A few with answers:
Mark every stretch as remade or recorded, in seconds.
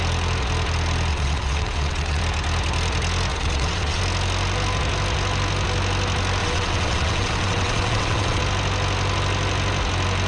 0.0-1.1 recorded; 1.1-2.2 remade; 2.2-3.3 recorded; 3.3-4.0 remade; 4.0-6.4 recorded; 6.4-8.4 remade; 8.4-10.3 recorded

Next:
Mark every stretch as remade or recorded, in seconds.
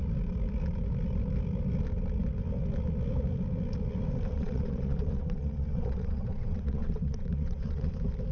0.0-4.3 recorded; 4.3-7.9 remade; 7.9-8.3 recorded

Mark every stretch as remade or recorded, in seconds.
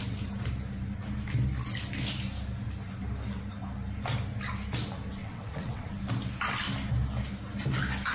0.0-5.2 recorded; 5.2-6.0 remade; 6.0-8.1 recorded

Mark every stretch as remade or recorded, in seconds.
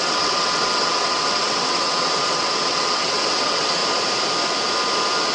0.0-3.8 remade; 3.8-5.3 recorded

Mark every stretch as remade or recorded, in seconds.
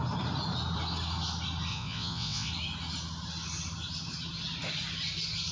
0.0-1.7 recorded; 1.7-2.5 remade; 2.5-5.5 recorded